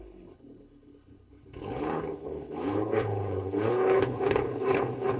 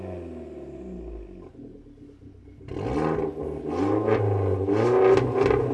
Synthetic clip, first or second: first